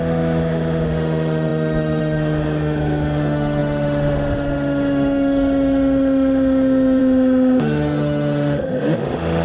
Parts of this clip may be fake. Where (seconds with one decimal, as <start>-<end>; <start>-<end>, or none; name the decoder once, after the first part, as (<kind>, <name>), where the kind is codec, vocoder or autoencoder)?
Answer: 0.0-9.4 (autoencoder, DAC-VAE)